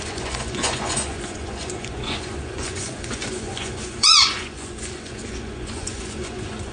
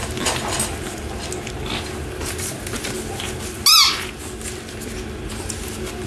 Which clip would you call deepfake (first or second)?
first